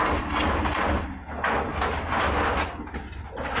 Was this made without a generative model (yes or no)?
yes